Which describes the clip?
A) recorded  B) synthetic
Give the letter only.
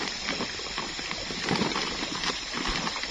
A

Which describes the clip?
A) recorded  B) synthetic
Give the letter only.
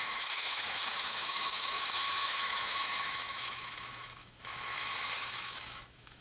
B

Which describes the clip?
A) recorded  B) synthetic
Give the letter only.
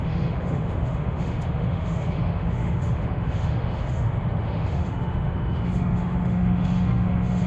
B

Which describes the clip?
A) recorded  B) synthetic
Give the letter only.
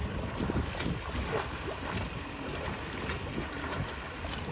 A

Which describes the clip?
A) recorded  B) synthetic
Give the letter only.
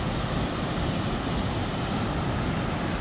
A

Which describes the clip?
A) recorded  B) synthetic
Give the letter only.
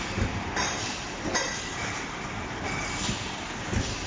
A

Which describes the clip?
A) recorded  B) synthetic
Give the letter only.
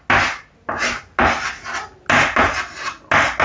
A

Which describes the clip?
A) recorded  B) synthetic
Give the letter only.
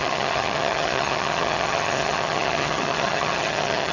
B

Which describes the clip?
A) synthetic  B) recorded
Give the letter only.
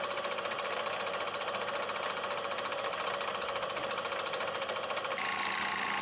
B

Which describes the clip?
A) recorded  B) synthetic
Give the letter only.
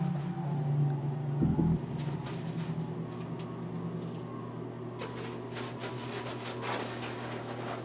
A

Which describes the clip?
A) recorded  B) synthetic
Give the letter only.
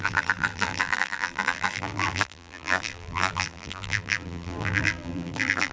B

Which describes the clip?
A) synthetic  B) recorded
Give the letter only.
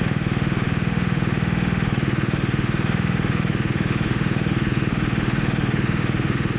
A